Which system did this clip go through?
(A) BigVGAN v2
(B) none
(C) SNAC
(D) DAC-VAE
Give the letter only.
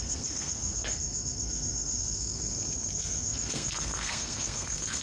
C